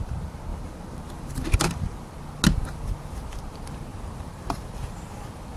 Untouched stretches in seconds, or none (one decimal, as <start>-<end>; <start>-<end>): 0.0-0.5; 2.1-3.9; 4.9-5.6